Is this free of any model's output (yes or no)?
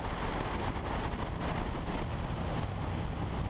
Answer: yes